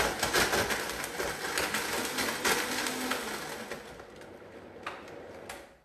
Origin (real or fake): real